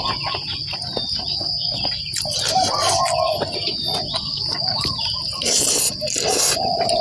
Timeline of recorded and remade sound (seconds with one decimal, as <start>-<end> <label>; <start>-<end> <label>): 0.0-4.3 recorded; 4.3-4.9 remade; 4.9-7.0 recorded